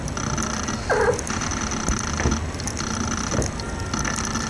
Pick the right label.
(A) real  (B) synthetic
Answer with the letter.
A